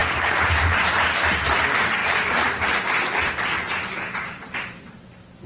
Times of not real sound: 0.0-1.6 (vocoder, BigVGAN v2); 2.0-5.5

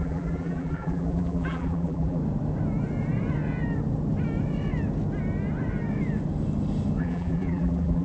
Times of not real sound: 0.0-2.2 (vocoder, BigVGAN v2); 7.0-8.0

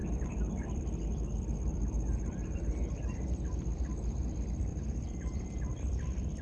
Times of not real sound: 0.0-0.8 (vocoder, BigVGAN v2); 1.7-3.4; 4.7-5.8

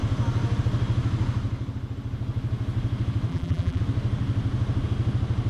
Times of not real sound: 3.3-3.8 (vocoder, BigVGAN v2)

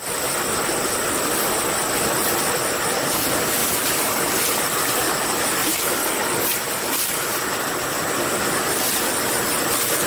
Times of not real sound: 3.6-4.6 (vocoder, BigVGAN v2)

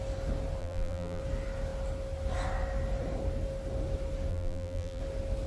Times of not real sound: 0.6-1.2 (vocoder, BigVGAN v2); 4.3-5.0

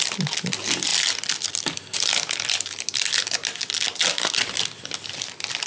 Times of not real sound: none